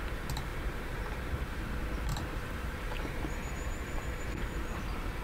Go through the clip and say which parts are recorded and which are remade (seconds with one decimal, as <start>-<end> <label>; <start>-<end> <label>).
0.0-0.5 recorded; 0.5-1.1 remade; 1.1-2.1 recorded; 2.1-5.2 remade